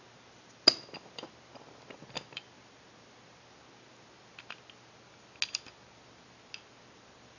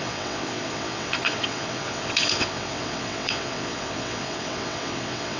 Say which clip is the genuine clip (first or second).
first